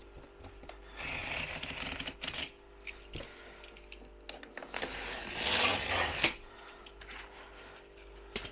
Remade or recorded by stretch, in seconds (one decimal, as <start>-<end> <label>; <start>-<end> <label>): 0.0-8.5 recorded